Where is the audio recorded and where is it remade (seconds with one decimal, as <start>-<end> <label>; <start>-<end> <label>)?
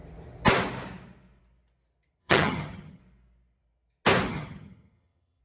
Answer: 0.0-2.2 recorded; 2.2-3.0 remade; 3.0-4.3 recorded; 4.3-5.4 remade